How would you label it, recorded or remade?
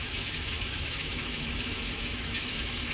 remade